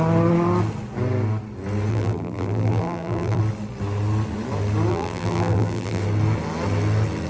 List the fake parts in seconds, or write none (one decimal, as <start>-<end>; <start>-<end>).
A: 1.9-3.4; 4.9-6.0

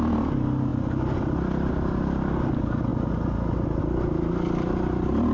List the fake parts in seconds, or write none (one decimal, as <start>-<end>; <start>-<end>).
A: none

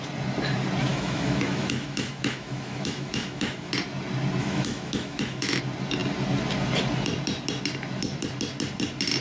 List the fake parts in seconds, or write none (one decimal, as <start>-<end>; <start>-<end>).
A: 0.9-3.7; 4.4-5.6

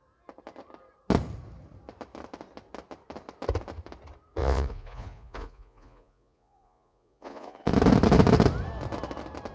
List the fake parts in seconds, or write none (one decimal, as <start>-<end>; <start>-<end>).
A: 4.4-7.7

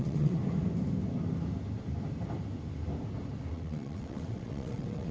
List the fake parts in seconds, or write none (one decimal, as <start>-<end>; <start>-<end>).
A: 0.0-0.4; 3.5-5.1

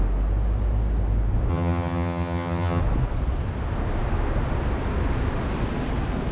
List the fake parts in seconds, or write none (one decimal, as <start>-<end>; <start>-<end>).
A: 1.5-2.8